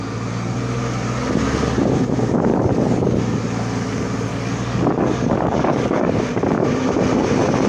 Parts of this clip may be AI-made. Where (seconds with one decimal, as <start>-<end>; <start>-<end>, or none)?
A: 2.5-3.2; 4.3-6.2